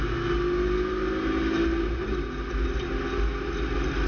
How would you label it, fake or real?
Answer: real